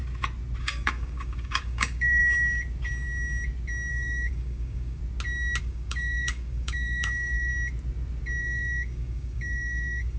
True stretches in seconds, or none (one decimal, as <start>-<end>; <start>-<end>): 0.0-0.6; 2.2-3.9; 5.0-5.6; 7.5-8.4